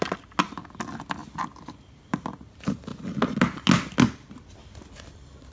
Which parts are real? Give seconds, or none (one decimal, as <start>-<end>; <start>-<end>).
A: 0.0-5.5